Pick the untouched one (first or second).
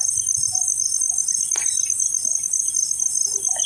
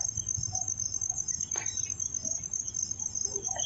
second